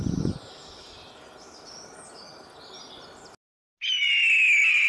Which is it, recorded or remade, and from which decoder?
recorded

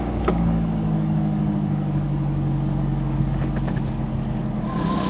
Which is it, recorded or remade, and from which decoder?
remade, codec, DAC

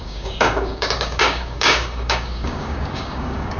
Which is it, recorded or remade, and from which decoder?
remade, codec, DAC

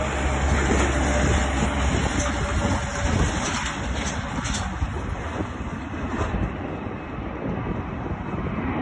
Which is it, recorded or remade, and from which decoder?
recorded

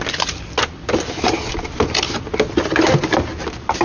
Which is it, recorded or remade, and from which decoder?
recorded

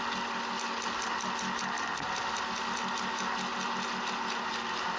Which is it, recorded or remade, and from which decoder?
recorded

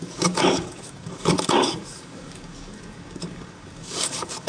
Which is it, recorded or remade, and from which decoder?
remade, codec, DAC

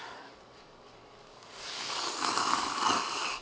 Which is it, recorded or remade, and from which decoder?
remade, codec, DAC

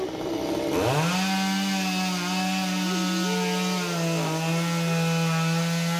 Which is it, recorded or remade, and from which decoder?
recorded